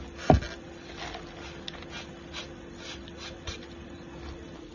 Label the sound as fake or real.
real